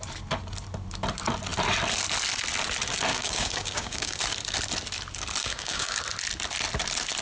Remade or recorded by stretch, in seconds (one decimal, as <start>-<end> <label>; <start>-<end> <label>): 0.0-3.1 recorded; 3.1-4.2 remade; 4.2-5.4 recorded; 5.4-6.0 remade; 6.0-7.2 recorded